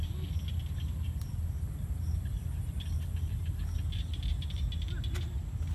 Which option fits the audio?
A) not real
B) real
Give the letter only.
B